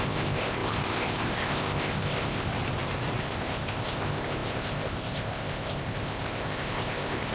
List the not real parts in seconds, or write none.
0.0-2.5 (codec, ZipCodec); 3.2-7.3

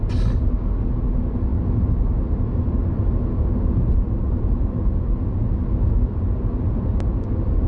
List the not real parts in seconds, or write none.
none